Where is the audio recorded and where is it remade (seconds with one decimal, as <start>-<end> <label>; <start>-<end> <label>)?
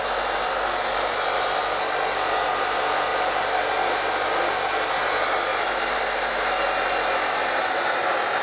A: 0.0-8.4 recorded